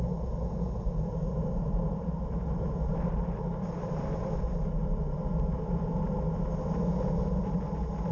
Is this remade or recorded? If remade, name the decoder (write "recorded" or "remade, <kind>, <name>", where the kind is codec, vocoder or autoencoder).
recorded